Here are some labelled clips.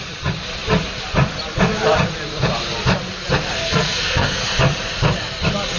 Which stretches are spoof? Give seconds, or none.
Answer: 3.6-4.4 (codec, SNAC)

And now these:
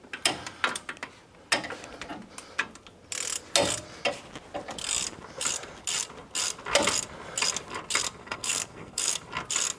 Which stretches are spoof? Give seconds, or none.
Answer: 8.2-9.1 (codec, SNAC)

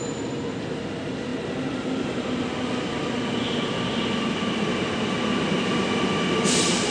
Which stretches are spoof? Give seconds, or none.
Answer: none

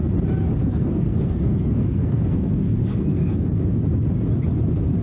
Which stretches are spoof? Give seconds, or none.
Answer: 0.6-3.6 (codec, SNAC)

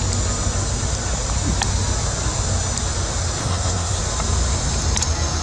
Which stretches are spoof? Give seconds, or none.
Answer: 3.4-4.0 (codec, SNAC)

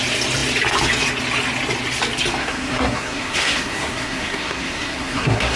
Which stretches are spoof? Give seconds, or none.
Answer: 2.4-5.6 (codec, SNAC)